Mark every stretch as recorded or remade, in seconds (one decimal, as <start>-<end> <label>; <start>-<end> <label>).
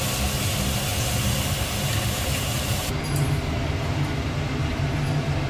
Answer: 0.0-5.5 recorded